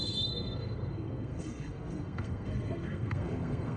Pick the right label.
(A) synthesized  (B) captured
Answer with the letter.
A